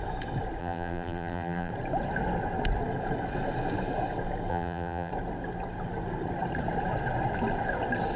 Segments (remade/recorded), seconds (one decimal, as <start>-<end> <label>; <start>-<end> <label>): 0.0-0.6 recorded; 0.6-1.7 remade; 1.7-4.5 recorded; 4.5-5.1 remade; 5.1-8.2 recorded